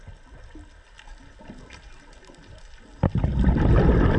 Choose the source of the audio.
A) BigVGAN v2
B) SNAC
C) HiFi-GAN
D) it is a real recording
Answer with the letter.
D